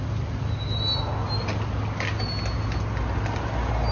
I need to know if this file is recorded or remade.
recorded